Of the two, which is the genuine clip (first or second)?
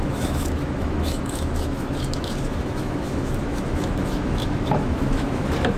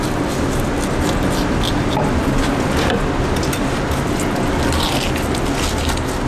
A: second